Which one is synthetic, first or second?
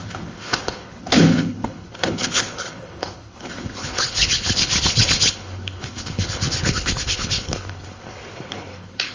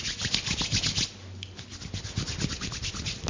first